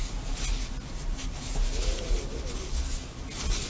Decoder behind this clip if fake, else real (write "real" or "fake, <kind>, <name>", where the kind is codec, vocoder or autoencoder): real